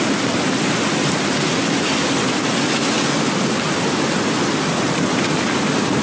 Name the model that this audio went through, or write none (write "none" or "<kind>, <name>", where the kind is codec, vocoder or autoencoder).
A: none